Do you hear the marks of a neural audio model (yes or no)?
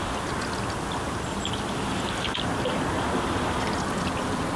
no